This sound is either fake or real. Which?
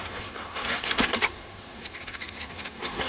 fake